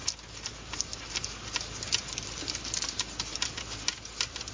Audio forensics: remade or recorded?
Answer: recorded